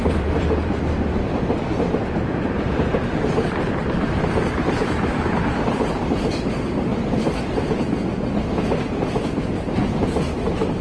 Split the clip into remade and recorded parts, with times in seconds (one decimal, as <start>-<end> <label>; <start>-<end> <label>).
0.0-5.2 remade; 5.2-10.8 recorded

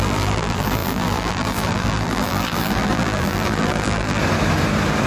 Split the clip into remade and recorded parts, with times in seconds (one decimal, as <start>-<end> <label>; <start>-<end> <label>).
0.0-4.2 remade; 4.2-5.1 recorded

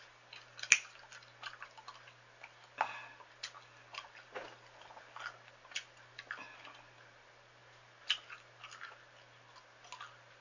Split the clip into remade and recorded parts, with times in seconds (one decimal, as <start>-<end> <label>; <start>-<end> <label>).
0.0-10.4 recorded

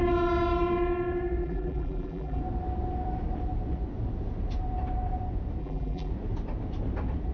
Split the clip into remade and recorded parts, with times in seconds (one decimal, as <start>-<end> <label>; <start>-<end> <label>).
0.0-1.4 recorded; 1.4-2.4 remade; 2.4-5.6 recorded; 5.6-6.1 remade; 6.1-7.3 recorded

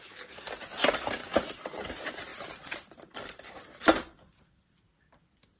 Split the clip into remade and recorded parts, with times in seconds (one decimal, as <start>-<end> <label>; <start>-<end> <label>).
0.0-2.3 recorded; 2.3-4.4 remade; 4.4-5.6 recorded